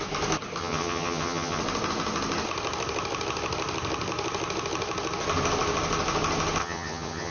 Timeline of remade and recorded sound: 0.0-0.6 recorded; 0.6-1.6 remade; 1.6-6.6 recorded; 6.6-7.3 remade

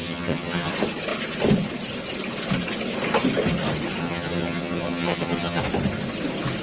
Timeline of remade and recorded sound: 0.0-0.7 remade; 0.7-4.0 recorded; 4.0-5.6 remade; 5.6-6.6 recorded

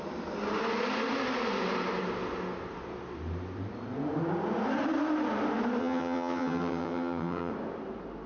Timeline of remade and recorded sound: 0.0-5.8 recorded; 5.8-7.5 remade; 7.5-8.3 recorded

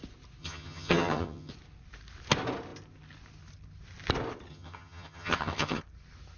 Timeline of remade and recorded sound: 0.0-0.4 recorded; 0.4-1.5 remade; 1.5-4.5 recorded; 4.5-5.8 remade; 5.8-6.4 recorded